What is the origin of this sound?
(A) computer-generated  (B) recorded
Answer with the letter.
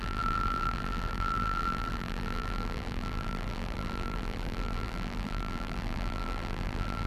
A